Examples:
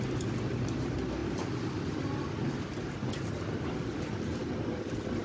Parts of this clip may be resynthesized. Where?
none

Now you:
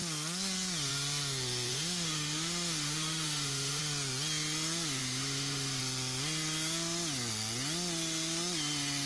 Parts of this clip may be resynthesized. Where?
1.7-3.8 (autoencoder, DAC-VAE); 5.0-5.8

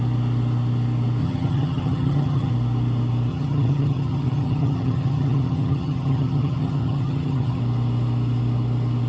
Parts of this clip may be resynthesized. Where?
1.2-2.5 (vocoder, HiFi-GAN); 3.3-7.6